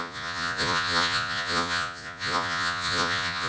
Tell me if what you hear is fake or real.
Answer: fake